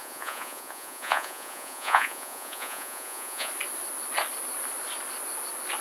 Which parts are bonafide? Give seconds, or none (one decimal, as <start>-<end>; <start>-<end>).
3.5-5.8

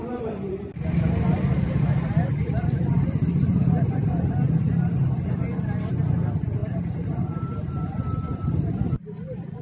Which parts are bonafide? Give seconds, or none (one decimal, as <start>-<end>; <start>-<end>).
0.0-2.4; 3.6-9.6

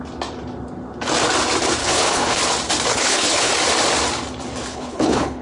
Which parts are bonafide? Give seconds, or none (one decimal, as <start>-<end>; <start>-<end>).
0.0-1.8; 2.4-2.9; 3.5-4.7

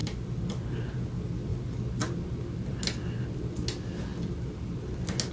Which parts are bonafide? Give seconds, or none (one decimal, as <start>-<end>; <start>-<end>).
0.0-5.3

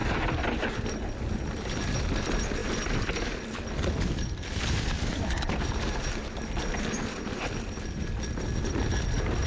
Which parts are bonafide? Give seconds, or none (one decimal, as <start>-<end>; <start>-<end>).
0.0-2.6; 5.9-9.5

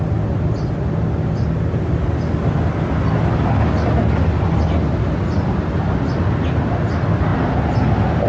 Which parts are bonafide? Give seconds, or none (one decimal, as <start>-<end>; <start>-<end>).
0.0-8.3